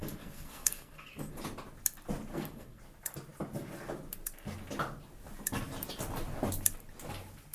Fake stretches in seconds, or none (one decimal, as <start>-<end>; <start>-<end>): 0.0-1.4; 2.3-2.8